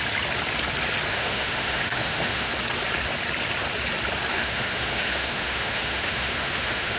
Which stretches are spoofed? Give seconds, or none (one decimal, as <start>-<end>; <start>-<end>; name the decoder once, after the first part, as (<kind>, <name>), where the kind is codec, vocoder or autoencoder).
1.1-2.5 (autoencoder, DAC-VAE); 4.3-7.0